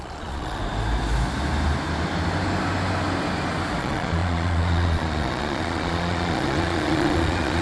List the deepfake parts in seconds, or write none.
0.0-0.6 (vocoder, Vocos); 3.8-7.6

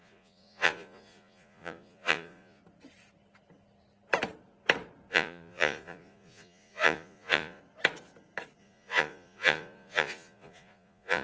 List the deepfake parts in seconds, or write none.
0.0-2.6 (vocoder, Vocos); 5.1-7.6; 8.6-11.2

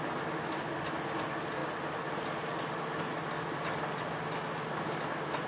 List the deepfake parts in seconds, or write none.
none

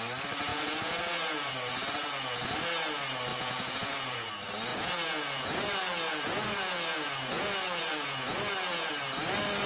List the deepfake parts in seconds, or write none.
0.5-1.5 (vocoder, Vocos); 3.3-4.3; 4.7-8.9